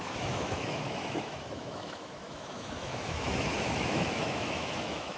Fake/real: fake